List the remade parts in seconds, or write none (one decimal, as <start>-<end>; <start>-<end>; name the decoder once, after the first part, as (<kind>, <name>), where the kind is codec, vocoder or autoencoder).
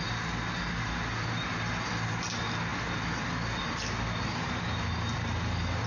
none